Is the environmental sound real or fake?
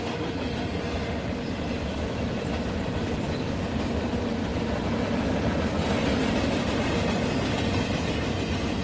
real